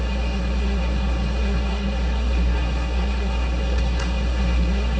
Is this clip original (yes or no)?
no